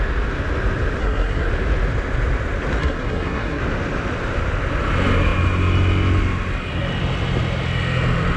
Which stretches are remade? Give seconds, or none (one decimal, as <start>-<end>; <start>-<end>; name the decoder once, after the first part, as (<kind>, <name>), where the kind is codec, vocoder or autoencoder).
1.0-1.5 (codec, SNAC); 2.8-3.6